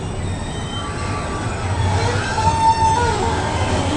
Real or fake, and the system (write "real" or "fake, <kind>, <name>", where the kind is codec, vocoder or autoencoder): real